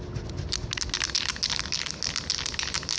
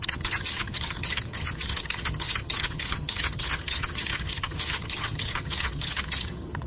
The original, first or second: first